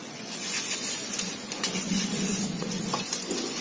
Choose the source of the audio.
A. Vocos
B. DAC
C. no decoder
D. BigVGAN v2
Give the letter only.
A